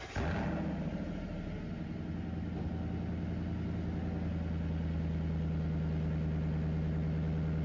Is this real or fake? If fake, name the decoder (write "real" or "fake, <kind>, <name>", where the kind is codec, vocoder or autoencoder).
real